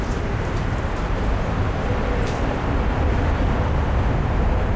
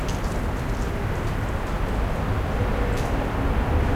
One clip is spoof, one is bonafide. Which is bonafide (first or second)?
second